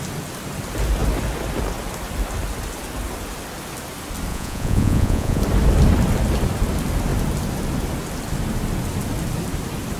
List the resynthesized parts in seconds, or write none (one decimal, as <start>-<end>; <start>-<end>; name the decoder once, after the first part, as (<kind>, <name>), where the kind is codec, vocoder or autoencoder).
4.3-5.4 (vocoder, Vocos)